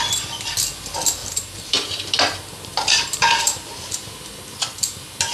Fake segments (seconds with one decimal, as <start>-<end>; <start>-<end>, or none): 1.2-4.4